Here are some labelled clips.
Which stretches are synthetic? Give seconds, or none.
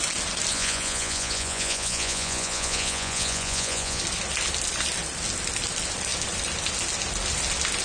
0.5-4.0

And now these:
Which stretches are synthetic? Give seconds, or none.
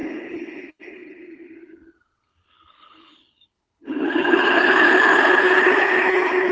0.0-6.5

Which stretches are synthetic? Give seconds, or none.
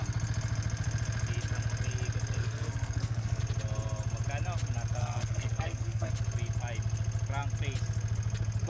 2.4-3.4; 5.0-6.1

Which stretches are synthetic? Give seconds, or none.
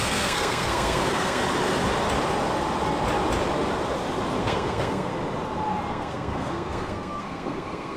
0.0-1.4; 4.4-5.1; 5.9-8.0